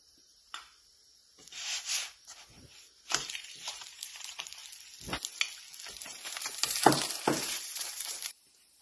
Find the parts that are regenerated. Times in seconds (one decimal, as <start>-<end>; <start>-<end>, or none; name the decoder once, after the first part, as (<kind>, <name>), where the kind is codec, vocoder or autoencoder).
0.0-4.6 (vocoder, BigVGAN v2); 5.9-8.8